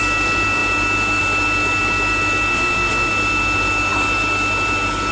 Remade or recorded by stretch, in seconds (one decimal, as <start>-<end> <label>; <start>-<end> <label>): 0.0-2.5 recorded; 2.5-3.1 remade; 3.1-5.1 recorded